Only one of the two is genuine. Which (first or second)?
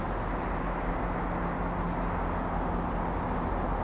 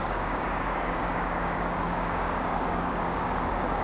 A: first